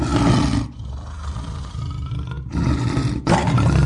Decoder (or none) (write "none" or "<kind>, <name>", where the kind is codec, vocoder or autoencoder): none